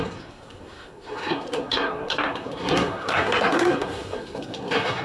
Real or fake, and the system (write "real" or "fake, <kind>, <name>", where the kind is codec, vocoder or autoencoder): fake, codec, SNAC